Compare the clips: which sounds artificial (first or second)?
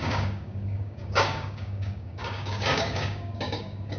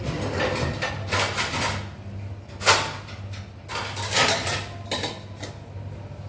first